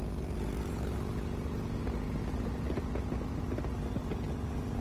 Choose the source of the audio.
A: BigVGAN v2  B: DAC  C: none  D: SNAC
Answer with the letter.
C